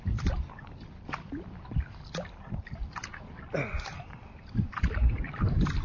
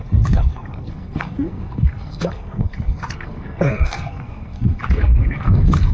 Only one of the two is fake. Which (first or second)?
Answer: second